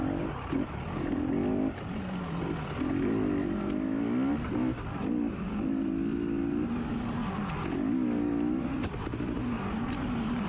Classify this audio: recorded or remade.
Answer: recorded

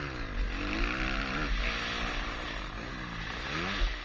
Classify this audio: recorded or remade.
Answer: recorded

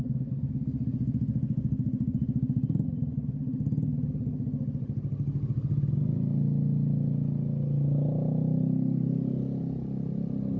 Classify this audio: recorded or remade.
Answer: recorded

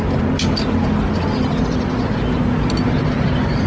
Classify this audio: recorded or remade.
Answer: recorded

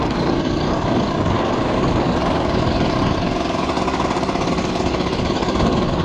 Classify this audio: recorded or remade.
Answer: remade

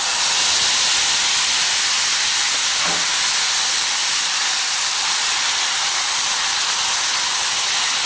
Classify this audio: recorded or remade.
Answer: recorded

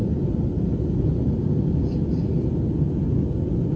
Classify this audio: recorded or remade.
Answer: recorded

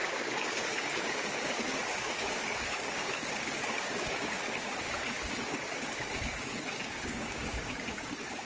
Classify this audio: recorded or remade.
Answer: remade